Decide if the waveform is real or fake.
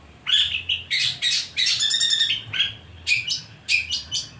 real